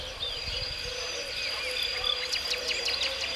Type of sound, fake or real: real